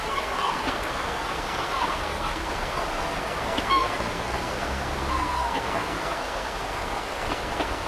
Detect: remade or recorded remade